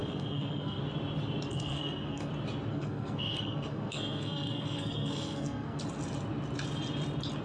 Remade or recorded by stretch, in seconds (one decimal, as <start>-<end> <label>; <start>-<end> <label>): 0.0-0.8 remade; 0.8-1.5 recorded; 1.5-2.3 remade; 2.3-2.7 recorded; 2.7-5.8 remade; 5.8-7.4 recorded